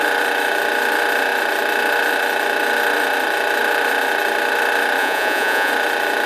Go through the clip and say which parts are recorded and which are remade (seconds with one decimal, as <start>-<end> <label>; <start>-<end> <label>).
0.0-5.0 recorded; 5.0-5.7 remade; 5.7-6.3 recorded